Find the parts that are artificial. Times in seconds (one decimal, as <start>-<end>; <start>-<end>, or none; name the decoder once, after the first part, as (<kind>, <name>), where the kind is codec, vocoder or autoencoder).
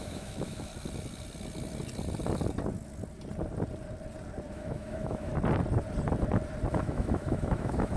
0.0-0.7 (autoencoder, DAC-VAE); 4.5-5.3; 6.7-8.0